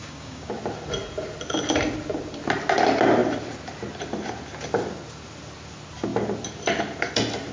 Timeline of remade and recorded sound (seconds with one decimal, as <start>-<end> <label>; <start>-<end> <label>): 0.0-0.5 remade; 0.5-7.5 recorded